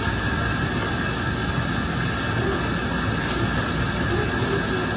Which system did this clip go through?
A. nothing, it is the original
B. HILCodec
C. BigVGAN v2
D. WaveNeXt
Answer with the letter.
A